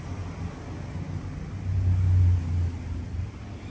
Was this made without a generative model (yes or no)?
yes